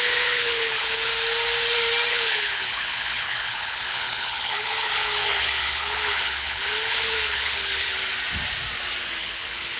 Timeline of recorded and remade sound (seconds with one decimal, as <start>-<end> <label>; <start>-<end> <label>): 0.0-1.1 remade; 1.1-2.1 recorded; 2.1-7.9 remade; 7.9-9.2 recorded; 9.2-9.8 remade